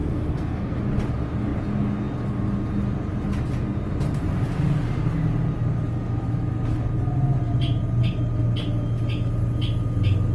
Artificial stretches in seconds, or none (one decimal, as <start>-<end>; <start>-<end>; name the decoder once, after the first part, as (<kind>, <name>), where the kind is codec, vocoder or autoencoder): 0.0-0.8 (codec, SNAC)